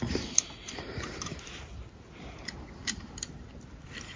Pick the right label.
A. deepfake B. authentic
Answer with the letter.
B